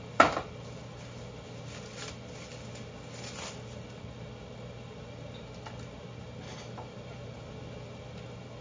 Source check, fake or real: real